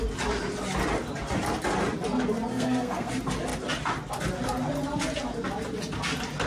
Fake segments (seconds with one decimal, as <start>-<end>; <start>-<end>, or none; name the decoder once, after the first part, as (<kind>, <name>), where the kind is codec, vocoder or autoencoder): 2.5-3.1 (codec, SNAC)